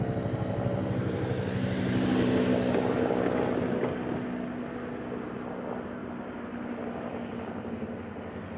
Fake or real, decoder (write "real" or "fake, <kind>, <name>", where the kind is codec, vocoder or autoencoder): real